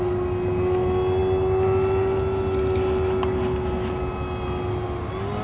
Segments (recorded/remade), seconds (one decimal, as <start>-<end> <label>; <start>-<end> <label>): 0.0-5.4 recorded